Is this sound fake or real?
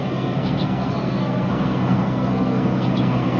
fake